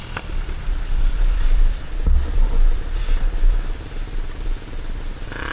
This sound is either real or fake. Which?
fake